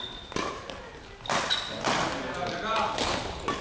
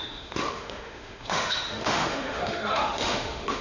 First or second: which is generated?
second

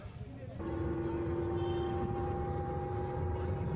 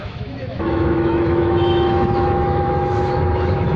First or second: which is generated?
second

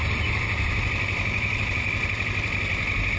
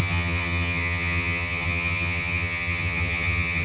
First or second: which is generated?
second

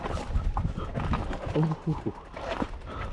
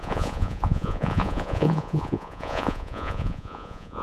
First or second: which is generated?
second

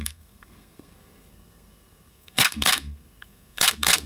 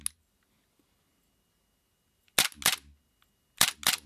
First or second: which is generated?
first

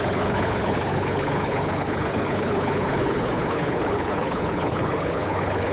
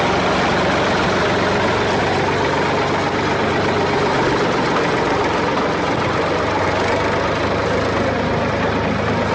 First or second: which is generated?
first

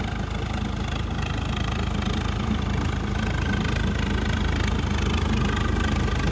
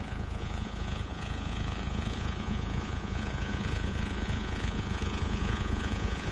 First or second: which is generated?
second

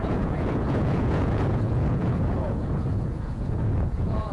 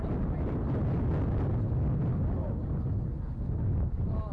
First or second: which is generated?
first